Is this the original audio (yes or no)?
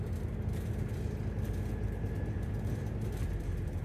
yes